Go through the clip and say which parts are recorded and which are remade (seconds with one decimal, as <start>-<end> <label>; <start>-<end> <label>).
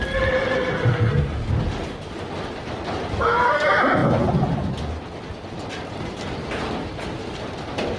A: 0.0-0.9 recorded; 0.9-1.5 remade; 1.5-8.0 recorded